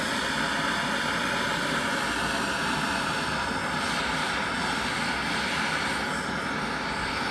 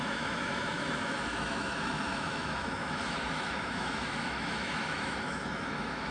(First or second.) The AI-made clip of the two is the second